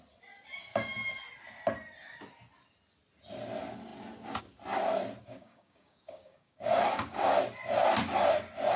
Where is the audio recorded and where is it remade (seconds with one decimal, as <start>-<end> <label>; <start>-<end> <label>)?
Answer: 0.0-0.7 recorded; 0.7-1.2 remade; 1.2-5.2 recorded; 5.2-7.3 remade; 7.3-8.8 recorded